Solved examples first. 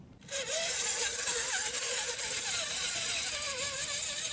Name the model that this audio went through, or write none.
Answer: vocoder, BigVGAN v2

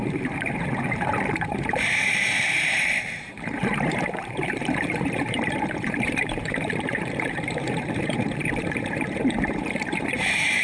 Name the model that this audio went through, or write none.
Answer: vocoder, BigVGAN v2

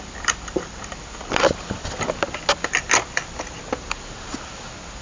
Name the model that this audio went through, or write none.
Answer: none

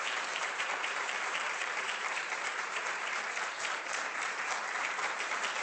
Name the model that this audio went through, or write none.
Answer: vocoder, BigVGAN v2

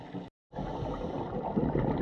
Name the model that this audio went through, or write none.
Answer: none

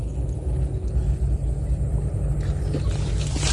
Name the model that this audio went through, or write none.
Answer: none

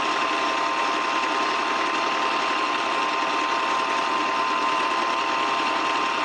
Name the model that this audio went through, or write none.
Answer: vocoder, BigVGAN v2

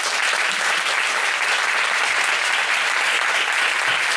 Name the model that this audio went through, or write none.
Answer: none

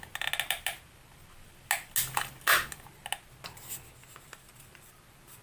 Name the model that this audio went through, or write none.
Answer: none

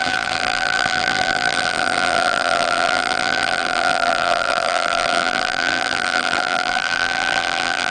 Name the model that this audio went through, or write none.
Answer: vocoder, BigVGAN v2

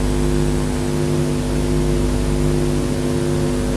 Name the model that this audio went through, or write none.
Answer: none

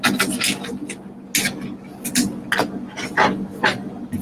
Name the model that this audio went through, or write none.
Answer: none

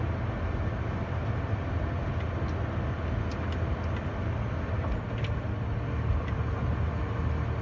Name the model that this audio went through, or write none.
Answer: none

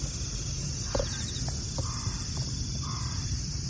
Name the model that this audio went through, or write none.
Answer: vocoder, BigVGAN v2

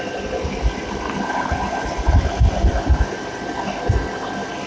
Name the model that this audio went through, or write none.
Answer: none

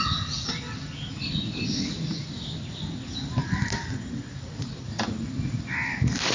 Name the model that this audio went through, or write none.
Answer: none